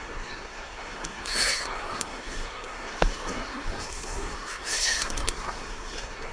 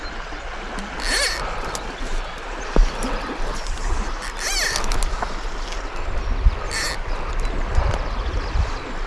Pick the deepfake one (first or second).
first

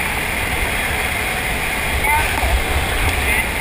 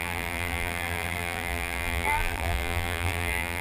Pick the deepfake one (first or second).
second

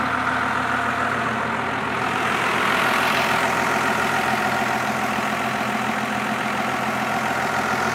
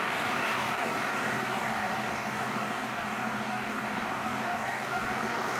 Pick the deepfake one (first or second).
second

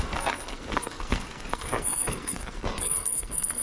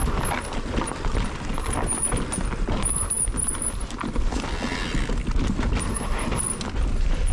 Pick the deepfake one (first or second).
first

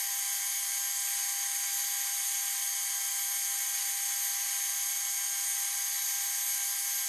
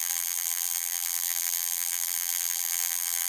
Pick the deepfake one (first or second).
second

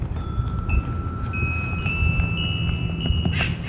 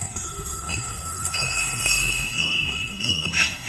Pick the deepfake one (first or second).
second